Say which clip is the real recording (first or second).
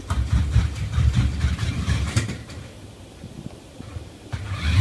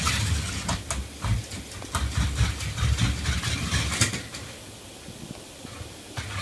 second